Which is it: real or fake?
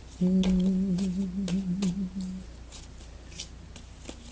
real